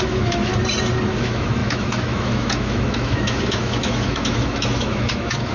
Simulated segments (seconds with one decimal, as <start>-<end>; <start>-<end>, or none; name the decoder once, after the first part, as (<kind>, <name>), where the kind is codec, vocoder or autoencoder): 0.0-0.5 (autoencoder, DAC-VAE); 1.1-5.5